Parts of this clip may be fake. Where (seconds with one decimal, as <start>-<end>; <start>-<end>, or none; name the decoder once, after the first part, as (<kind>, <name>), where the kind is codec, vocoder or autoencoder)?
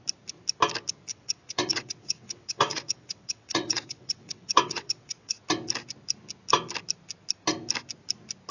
1.1-5.4 (vocoder, WaveNeXt)